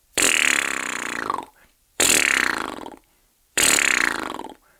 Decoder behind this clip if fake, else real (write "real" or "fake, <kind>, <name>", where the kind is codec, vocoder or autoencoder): fake, vocoder, BigVGAN v2